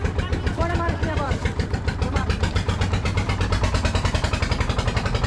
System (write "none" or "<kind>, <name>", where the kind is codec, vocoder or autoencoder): vocoder, BigVGAN v2